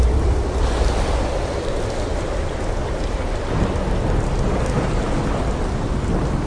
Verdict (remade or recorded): recorded